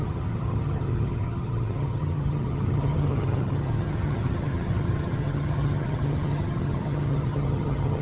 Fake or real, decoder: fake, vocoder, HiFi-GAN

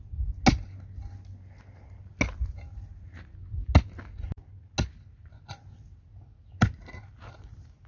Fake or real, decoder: real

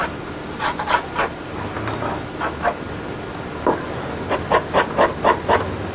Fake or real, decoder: real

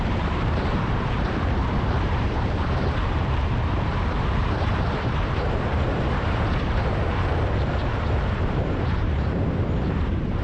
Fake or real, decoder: fake, vocoder, BigVGAN v2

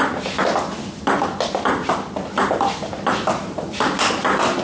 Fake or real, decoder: real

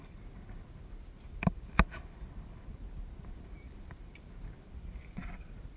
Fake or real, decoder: fake, vocoder, BigVGAN v2